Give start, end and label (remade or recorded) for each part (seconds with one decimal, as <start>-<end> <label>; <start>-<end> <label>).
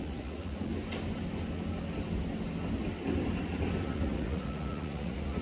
0.0-0.7 remade; 0.7-3.8 recorded; 3.8-5.4 remade